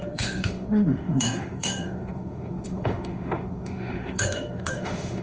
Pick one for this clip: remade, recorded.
remade